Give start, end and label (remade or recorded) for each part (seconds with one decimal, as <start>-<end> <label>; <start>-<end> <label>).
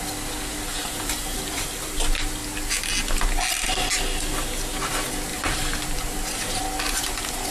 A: 0.0-0.7 recorded; 0.7-2.0 remade; 2.0-5.3 recorded; 5.3-6.6 remade; 6.6-7.5 recorded